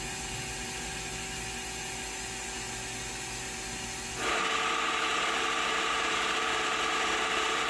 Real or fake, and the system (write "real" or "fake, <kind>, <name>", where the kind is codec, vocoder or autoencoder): real